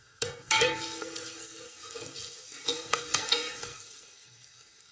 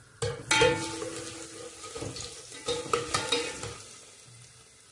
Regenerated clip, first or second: first